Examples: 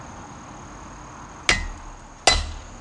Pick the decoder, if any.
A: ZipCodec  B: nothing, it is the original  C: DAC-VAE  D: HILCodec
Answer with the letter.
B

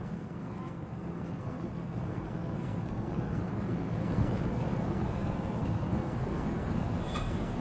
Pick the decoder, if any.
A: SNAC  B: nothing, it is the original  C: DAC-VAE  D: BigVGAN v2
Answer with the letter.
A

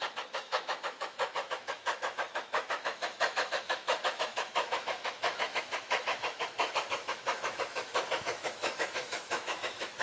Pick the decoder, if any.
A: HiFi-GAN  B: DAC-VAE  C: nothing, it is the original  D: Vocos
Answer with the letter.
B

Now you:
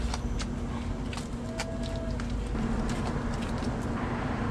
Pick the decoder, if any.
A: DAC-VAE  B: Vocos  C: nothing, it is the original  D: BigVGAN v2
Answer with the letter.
C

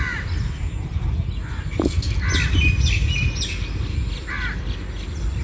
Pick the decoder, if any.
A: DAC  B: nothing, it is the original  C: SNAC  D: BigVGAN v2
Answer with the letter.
B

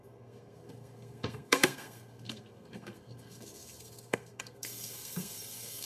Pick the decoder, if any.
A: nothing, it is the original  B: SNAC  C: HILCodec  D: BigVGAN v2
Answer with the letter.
B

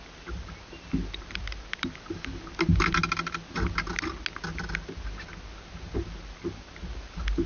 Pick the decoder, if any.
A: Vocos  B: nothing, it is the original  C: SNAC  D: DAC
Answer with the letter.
B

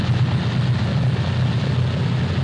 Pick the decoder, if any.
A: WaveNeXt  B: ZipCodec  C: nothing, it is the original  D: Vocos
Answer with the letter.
C